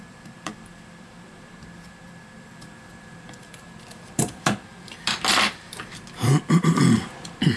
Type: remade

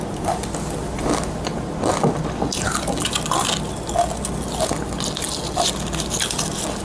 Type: recorded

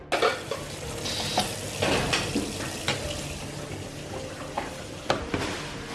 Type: recorded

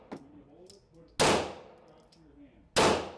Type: recorded